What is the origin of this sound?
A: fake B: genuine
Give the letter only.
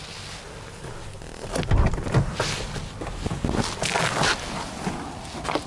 B